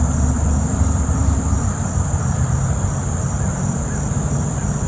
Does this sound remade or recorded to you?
recorded